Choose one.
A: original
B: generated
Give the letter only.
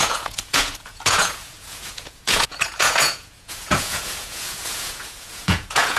B